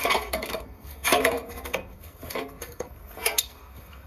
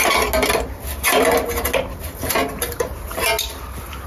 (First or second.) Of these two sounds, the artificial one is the first